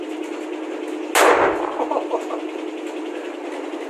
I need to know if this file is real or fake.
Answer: real